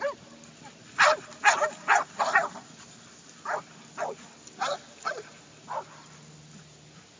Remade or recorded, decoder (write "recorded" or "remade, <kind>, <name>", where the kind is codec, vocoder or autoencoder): recorded